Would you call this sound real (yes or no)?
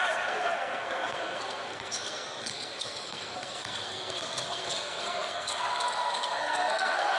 no